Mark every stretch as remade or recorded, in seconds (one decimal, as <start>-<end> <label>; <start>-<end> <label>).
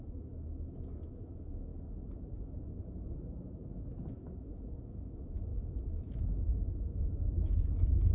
0.0-8.1 remade